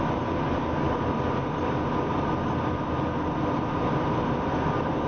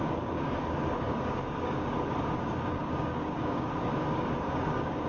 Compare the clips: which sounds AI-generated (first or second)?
second